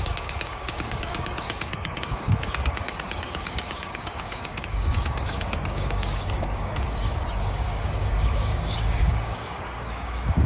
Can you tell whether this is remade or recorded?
remade